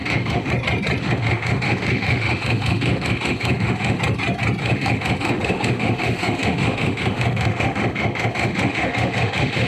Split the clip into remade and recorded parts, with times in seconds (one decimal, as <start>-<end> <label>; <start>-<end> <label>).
0.0-0.5 remade; 0.5-1.0 recorded; 1.0-4.0 remade; 4.0-4.6 recorded; 4.6-9.7 remade